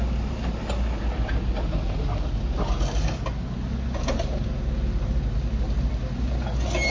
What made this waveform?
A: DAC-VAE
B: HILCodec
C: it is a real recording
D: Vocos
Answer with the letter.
C